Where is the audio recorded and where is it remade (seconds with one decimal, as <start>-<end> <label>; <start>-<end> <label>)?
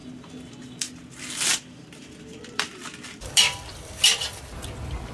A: 0.0-0.6 remade; 0.6-1.5 recorded; 1.5-4.6 remade; 4.6-5.1 recorded